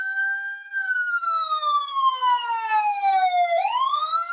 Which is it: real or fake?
fake